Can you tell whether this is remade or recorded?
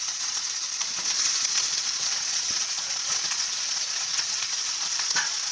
remade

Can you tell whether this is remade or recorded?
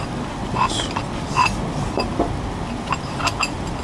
recorded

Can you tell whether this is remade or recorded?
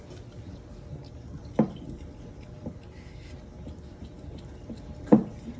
remade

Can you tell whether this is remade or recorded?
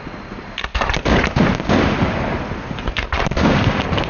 recorded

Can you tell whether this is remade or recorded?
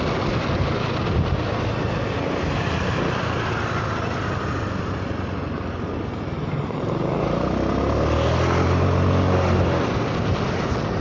recorded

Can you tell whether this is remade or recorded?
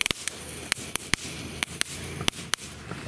recorded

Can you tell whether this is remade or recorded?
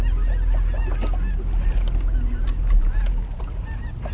recorded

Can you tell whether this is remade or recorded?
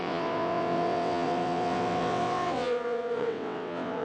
remade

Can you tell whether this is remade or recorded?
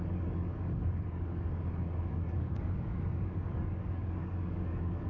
remade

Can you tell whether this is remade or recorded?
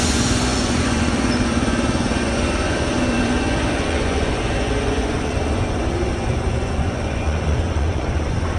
remade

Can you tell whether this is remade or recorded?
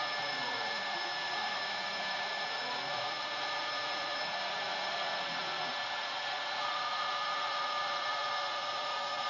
remade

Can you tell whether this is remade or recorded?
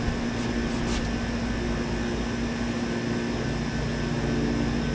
recorded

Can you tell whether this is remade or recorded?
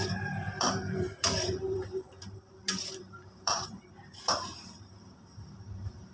remade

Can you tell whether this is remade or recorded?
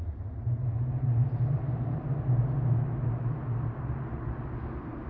recorded